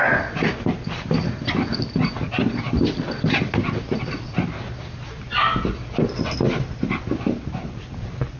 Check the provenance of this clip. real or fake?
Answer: real